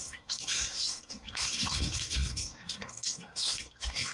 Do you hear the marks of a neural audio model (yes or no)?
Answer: yes